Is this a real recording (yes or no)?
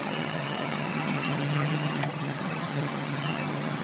no